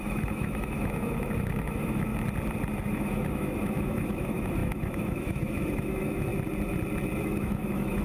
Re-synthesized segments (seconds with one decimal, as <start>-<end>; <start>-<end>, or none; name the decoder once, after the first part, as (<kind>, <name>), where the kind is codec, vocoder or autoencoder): 0.0-2.1 (autoencoder, DAC-VAE); 2.8-6.3; 7.2-8.0